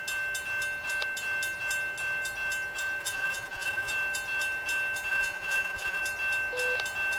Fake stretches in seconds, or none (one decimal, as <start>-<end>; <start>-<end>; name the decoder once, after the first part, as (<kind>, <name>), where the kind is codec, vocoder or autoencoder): 3.0-3.9 (vocoder, Vocos); 5.1-6.0